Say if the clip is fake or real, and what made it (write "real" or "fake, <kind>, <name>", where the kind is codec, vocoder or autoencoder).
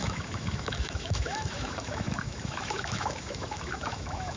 fake, autoencoder, DAC-VAE